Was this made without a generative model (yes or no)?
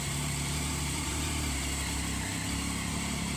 no